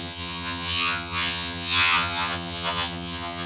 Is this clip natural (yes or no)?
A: no